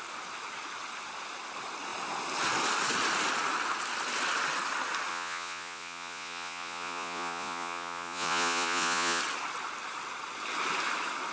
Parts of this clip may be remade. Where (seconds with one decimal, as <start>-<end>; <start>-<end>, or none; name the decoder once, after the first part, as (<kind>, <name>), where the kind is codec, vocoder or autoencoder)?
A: 5.1-9.2 (vocoder, Vocos)